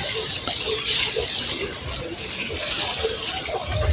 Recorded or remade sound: recorded